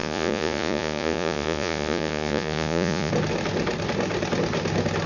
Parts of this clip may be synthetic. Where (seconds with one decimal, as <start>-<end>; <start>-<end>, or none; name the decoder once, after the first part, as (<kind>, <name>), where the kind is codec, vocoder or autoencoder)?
0.0-3.1 (vocoder, Vocos)